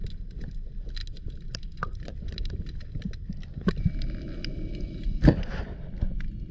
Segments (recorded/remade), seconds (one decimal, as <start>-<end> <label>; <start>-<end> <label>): 0.0-6.5 recorded